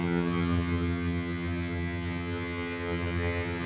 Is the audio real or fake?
fake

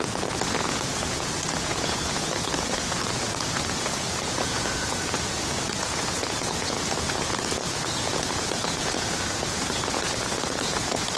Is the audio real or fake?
fake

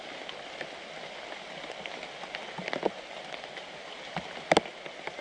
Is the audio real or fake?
real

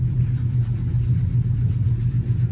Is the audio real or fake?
real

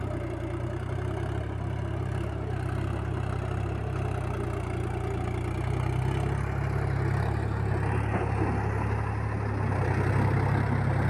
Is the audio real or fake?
real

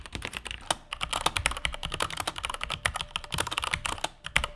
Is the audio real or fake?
real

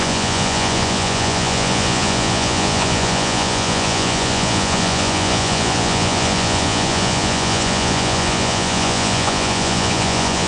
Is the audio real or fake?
fake